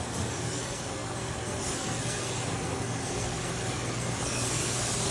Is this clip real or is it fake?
fake